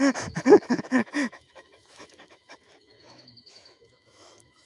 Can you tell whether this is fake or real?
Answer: fake